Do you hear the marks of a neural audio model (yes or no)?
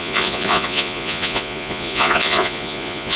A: yes